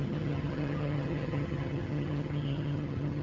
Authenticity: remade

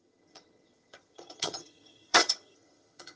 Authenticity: remade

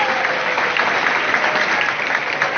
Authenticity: recorded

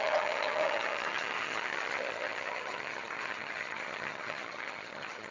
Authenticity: remade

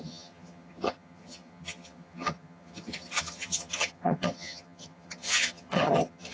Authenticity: remade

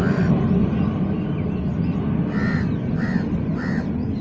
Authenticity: recorded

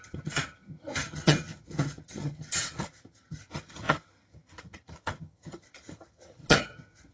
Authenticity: remade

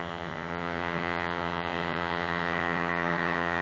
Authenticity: remade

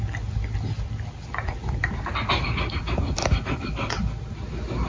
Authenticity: recorded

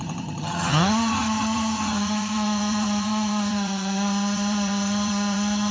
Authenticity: remade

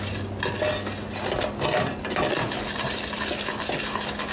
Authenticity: recorded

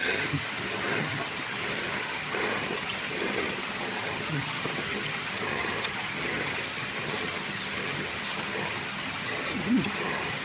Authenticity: remade